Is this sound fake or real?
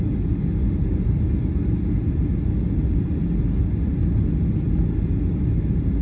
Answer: real